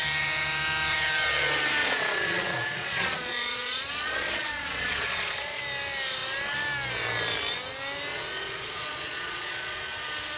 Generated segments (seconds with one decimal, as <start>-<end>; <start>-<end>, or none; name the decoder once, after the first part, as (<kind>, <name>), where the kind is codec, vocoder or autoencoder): 1.8-5.6 (vocoder, Vocos); 8.1-9.8